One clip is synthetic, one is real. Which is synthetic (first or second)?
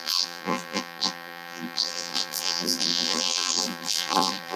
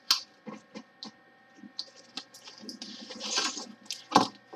first